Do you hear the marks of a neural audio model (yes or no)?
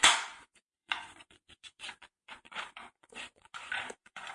yes